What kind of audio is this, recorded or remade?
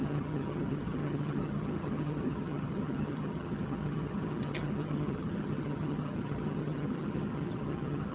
remade